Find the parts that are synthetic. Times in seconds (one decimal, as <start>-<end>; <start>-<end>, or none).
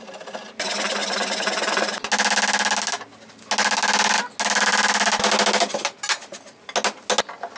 none